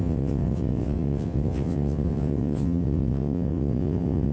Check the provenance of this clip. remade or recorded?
remade